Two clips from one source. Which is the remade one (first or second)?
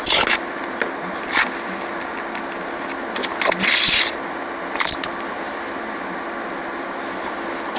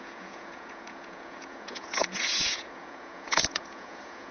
second